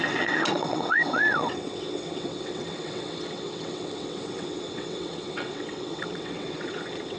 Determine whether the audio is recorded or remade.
remade